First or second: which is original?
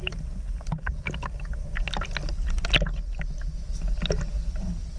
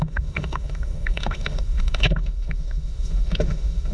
first